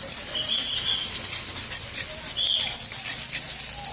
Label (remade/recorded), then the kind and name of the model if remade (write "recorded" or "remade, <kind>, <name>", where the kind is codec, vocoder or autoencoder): recorded